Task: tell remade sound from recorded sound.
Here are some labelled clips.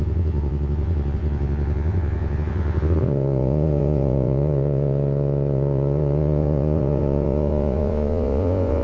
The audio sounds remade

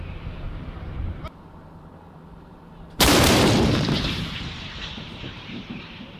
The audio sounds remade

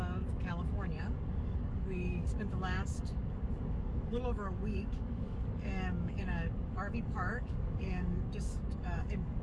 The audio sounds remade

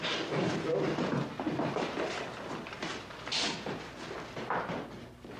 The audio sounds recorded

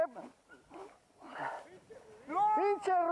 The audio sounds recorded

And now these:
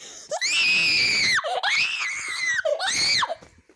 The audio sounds recorded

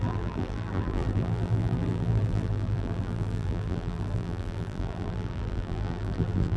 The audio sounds remade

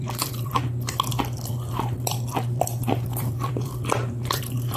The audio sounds remade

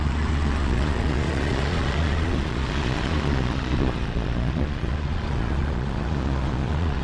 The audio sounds remade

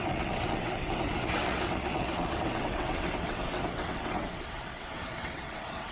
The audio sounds remade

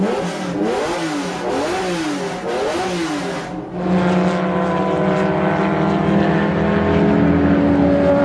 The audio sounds recorded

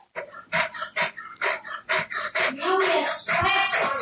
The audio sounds recorded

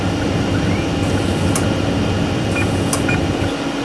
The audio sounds recorded